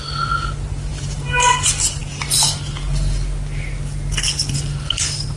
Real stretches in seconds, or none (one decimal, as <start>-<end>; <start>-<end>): 0.0-5.4